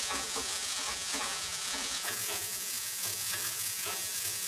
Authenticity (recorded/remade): remade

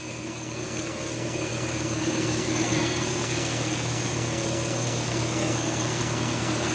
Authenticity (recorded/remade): remade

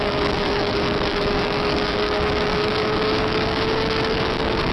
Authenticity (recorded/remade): remade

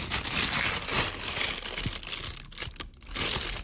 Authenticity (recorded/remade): recorded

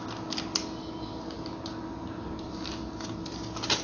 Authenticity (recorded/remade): recorded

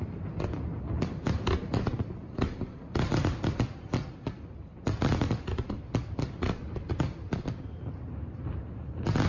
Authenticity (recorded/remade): recorded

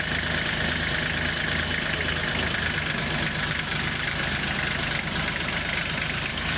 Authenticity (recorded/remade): recorded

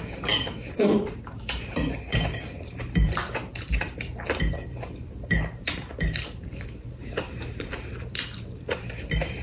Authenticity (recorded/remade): remade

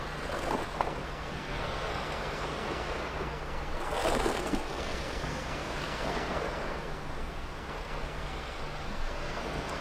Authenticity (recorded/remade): remade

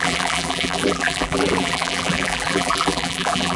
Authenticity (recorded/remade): remade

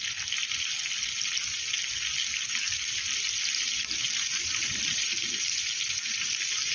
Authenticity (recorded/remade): recorded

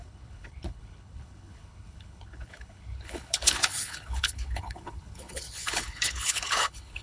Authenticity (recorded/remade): remade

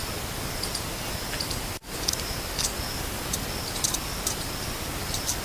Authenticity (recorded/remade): recorded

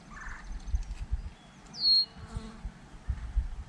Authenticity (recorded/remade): recorded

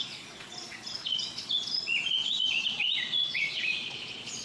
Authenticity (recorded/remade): remade